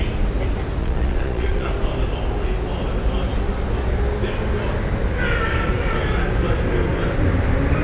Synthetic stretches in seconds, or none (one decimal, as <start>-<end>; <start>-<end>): 0.8-1.7